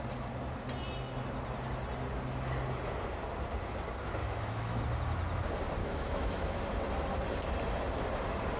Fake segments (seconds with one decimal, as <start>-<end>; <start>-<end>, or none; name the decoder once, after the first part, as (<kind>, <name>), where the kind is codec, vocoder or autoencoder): 4.2-4.8 (autoencoder, DAC-VAE); 5.8-6.6